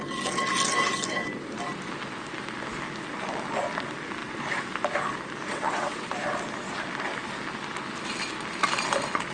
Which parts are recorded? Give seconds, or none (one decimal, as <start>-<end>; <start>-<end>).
0.0-5.5; 6.1-9.3